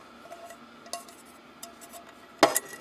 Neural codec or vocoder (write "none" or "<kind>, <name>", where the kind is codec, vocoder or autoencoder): none